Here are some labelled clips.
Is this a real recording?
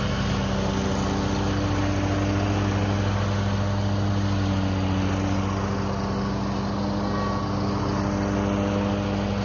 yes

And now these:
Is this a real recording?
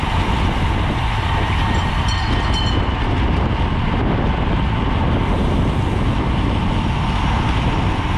yes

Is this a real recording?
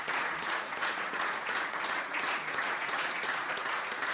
no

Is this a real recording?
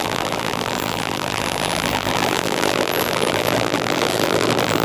no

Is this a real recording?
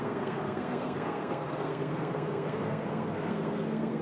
no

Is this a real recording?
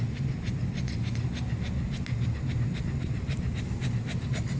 yes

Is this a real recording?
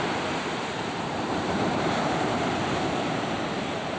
no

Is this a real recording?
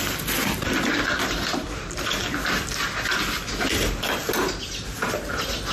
yes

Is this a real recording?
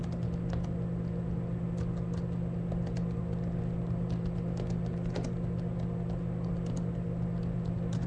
yes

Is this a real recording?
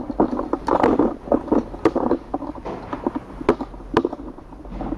yes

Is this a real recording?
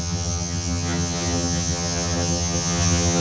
no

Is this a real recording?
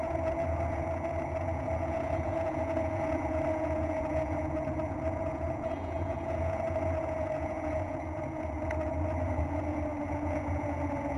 no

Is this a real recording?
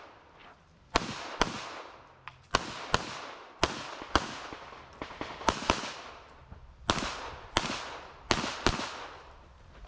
yes